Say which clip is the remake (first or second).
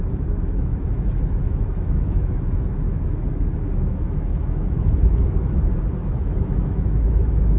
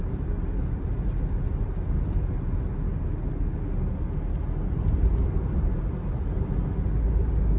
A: first